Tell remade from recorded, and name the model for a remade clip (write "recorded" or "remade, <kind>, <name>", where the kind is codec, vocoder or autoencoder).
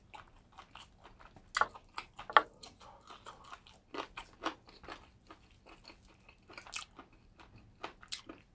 recorded